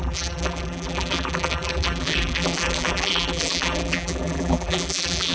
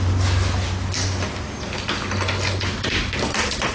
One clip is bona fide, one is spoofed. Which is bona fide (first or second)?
second